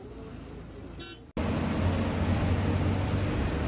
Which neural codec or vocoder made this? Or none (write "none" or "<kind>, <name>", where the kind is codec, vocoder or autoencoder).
none